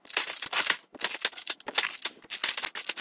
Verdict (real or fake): real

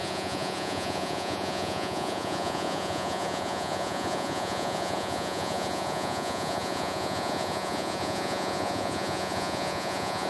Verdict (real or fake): fake